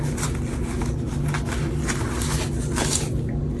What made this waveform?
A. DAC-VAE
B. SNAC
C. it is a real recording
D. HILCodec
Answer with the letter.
C